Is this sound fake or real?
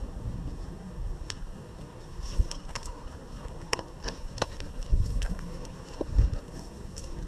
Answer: fake